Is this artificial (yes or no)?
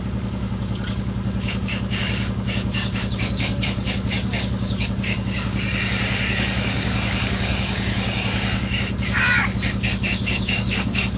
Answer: yes